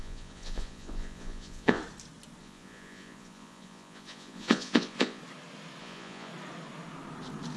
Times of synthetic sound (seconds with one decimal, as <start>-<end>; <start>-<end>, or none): 0.0-1.8; 2.4-5.2; 5.8-6.3